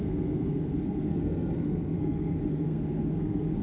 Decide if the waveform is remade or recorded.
remade